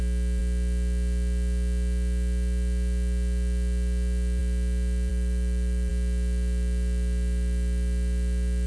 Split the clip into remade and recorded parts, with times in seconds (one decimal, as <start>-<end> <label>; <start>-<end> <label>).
0.0-5.1 recorded; 5.1-5.9 remade; 5.9-8.7 recorded